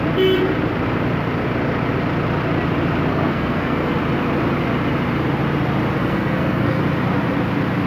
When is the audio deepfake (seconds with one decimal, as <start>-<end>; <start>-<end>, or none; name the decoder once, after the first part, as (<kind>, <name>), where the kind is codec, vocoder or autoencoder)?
3.1-3.9 (codec, SNAC); 6.0-6.8

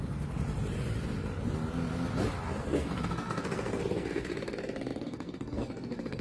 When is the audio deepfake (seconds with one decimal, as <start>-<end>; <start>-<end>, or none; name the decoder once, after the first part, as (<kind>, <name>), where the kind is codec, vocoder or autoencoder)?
2.6-6.2 (codec, SNAC)

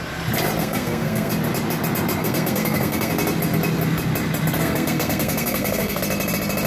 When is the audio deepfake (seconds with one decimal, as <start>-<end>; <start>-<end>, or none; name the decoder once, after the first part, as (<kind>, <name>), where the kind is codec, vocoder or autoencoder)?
0.6-1.3 (codec, SNAC); 2.2-3.1; 4.6-6.0

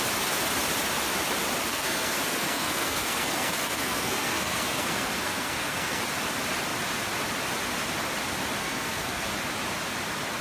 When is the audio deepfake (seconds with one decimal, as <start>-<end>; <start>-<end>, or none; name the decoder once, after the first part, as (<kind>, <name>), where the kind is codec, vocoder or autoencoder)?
1.7-6.0 (codec, SNAC); 8.6-9.3

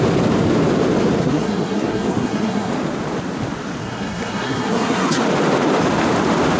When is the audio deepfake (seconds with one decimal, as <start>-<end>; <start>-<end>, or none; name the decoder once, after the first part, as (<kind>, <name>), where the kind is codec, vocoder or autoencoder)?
1.2-2.7 (codec, SNAC); 3.8-5.2

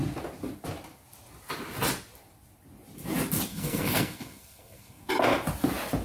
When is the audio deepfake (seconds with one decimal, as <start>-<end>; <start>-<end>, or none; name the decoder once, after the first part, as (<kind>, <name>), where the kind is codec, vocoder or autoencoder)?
3.5-5.1 (codec, SNAC)

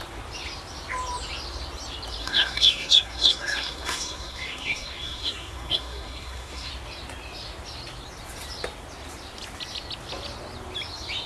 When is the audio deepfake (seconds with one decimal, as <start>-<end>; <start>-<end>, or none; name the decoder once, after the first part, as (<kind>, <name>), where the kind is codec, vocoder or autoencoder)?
2.2-6.7 (codec, SNAC)

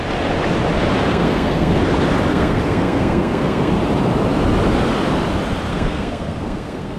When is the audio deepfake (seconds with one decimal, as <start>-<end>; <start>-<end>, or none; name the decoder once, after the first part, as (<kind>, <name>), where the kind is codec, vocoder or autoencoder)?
1.1-1.8 (codec, SNAC); 2.3-3.7; 5.7-7.0